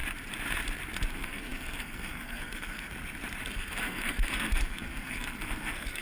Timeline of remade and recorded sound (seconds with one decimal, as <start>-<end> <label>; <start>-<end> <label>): 0.0-1.1 recorded; 1.1-2.9 remade; 2.9-3.5 recorded; 3.5-6.0 remade